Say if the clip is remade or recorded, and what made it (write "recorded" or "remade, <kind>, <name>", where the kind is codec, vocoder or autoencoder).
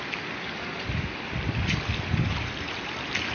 recorded